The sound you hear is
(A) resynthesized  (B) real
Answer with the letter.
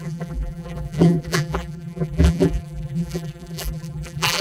A